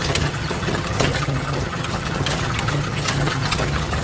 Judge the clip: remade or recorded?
remade